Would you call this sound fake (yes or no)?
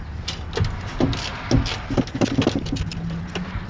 no